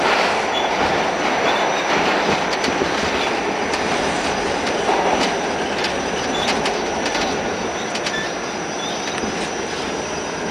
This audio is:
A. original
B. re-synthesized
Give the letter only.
B